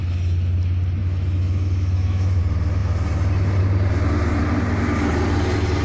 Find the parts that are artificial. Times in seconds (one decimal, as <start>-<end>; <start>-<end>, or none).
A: 1.0-2.4